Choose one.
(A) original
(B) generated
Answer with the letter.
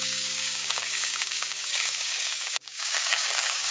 B